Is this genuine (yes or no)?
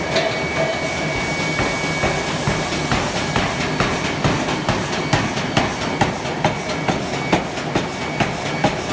yes